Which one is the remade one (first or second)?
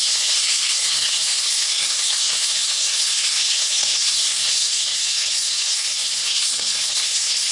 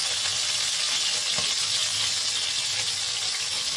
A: first